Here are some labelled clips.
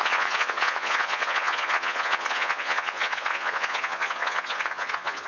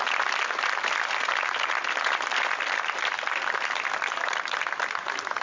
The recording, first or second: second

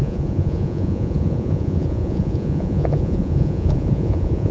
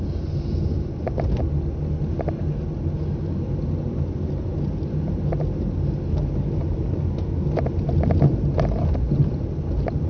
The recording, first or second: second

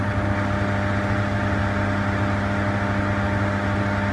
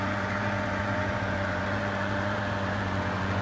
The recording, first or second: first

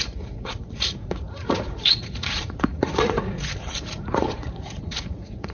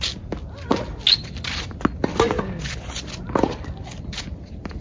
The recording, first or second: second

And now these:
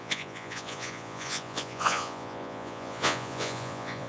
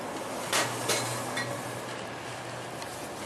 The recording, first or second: second